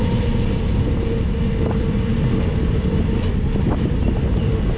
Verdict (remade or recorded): recorded